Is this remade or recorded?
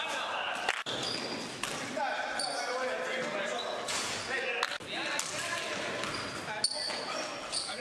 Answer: recorded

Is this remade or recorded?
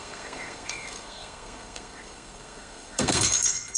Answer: remade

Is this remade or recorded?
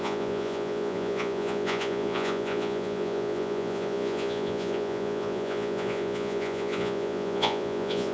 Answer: remade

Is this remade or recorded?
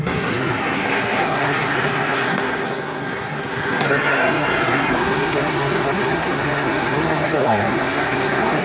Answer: remade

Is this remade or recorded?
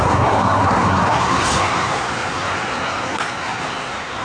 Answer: remade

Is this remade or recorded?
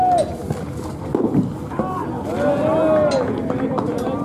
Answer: recorded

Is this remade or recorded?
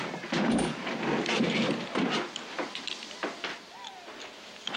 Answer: recorded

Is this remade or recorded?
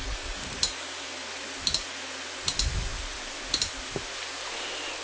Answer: recorded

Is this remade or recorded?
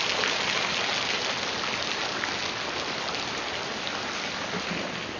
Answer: recorded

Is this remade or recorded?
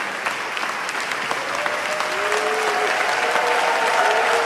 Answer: recorded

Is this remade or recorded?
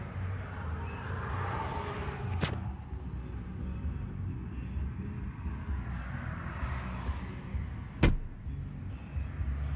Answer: recorded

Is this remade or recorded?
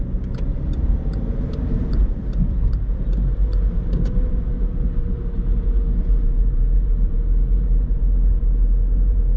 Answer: remade